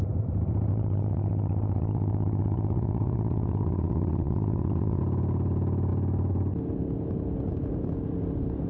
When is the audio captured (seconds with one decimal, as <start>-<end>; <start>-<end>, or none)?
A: 0.0-0.7; 5.0-8.7